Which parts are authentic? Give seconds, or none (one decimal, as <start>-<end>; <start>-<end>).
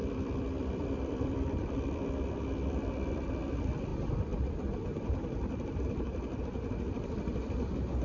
3.3-3.9; 6.4-8.0